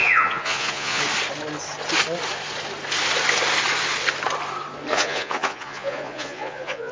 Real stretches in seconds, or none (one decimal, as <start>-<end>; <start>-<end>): 1.0-4.9